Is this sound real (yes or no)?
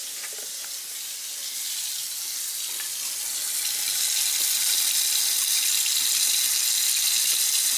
yes